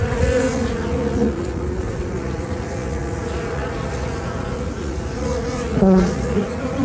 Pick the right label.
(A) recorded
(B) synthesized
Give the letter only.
B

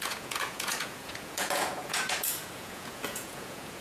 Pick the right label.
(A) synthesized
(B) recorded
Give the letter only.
A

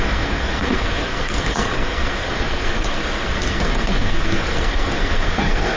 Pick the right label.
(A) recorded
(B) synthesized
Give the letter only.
B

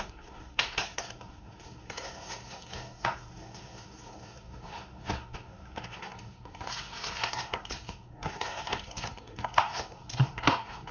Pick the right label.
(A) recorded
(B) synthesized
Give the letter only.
B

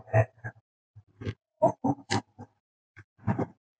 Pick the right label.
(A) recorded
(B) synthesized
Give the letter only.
B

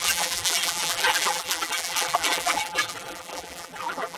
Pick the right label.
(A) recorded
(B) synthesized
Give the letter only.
B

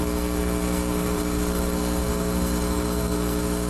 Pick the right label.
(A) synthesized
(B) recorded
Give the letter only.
A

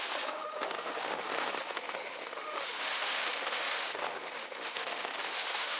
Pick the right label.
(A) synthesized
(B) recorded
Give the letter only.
A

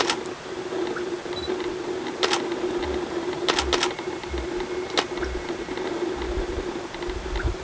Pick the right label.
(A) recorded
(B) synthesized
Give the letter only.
A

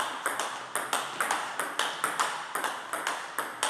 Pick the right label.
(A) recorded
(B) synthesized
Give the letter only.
A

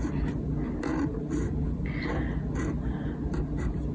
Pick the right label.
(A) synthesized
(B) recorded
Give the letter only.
B